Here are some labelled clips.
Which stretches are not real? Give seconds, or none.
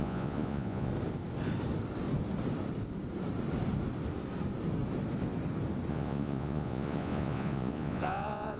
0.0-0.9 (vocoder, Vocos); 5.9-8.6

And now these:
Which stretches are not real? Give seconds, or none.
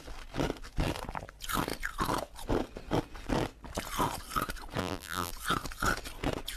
4.8-5.3 (vocoder, BigVGAN v2)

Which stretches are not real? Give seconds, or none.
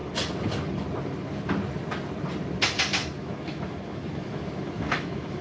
3.2-5.4 (autoencoder, DAC-VAE)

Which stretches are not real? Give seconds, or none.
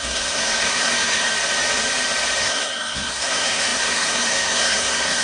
0.0-1.3 (codec, SNAC); 2.4-5.2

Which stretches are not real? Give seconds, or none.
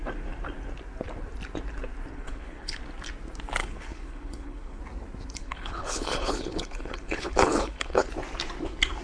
2.1-2.8 (codec, HILCodec); 3.6-4.8; 5.4-8.1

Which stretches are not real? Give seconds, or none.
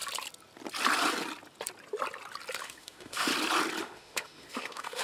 2.6-3.3 (autoencoder, DAC-VAE); 3.8-5.0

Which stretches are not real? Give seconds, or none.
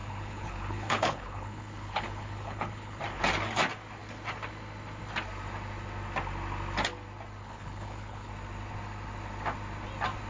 0.0-3.0 (codec, HILCodec); 7.4-8.3